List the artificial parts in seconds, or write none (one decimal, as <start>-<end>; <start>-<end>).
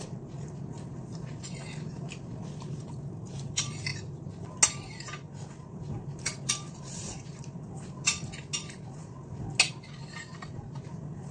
none